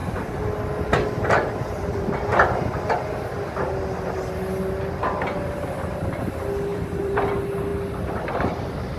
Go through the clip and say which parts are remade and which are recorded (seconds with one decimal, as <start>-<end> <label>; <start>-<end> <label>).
0.0-0.5 remade; 0.5-6.7 recorded; 6.7-7.3 remade; 7.3-9.0 recorded